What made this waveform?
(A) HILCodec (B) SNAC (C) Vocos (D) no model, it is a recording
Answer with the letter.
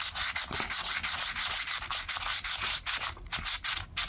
D